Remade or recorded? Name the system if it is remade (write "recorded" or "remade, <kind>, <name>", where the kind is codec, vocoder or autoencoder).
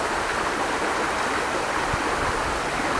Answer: recorded